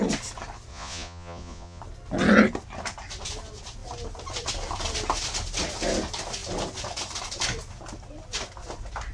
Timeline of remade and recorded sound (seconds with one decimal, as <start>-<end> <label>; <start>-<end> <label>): 0.0-0.7 recorded; 0.7-1.8 remade; 1.8-9.1 recorded